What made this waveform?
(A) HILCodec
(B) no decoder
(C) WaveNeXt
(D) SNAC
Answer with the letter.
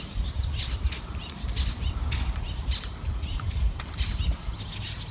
B